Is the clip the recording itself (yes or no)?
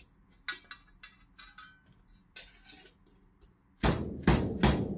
yes